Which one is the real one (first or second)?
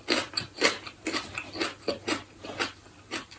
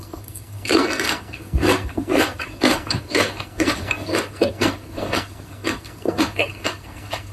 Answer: first